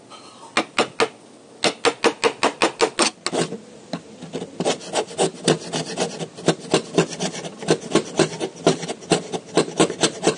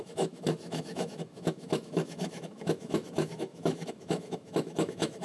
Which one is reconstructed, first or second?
second